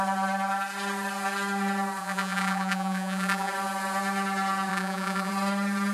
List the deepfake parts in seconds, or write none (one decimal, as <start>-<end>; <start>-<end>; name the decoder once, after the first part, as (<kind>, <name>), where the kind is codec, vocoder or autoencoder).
2.0-3.5 (vocoder, Vocos); 4.7-5.3